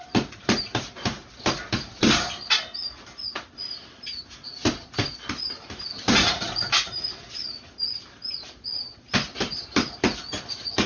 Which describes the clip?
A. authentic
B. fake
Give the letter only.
A